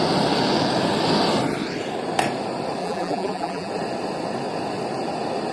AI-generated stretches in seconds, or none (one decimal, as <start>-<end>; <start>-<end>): 2.8-3.7